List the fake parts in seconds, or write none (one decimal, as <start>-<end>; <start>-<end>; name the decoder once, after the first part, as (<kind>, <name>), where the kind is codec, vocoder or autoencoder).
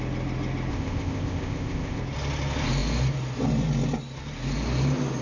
0.7-2.0 (codec, ZipCodec)